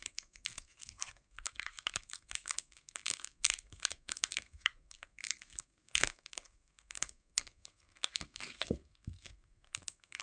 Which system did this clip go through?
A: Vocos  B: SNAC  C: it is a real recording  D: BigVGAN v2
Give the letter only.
B